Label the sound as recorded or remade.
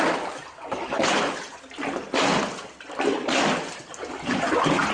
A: recorded